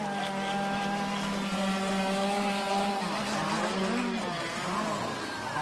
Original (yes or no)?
yes